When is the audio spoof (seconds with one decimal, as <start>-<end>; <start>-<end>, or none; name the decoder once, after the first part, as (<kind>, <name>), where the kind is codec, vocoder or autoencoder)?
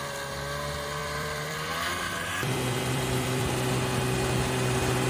1.0-3.7 (vocoder, BigVGAN v2)